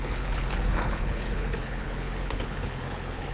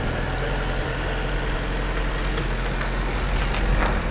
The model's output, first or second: first